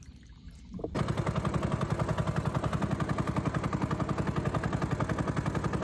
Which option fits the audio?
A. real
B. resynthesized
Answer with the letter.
A